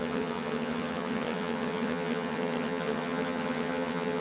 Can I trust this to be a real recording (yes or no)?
no